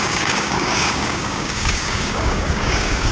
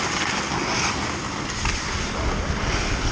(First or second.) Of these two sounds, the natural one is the second